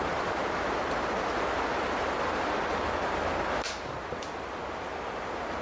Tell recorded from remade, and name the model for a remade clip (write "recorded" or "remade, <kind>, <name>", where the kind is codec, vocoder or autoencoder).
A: remade, vocoder, BigVGAN v2